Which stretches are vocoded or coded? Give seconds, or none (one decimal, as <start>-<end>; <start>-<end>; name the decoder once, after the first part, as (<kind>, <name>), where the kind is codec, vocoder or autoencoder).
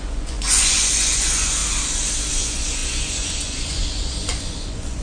0.0-1.6 (vocoder, Vocos); 2.3-5.0